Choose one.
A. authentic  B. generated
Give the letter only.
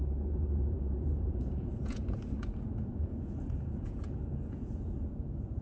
B